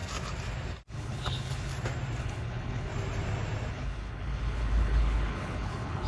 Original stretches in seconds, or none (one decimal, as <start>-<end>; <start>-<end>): 0.0-0.9; 1.7-2.2; 2.9-3.7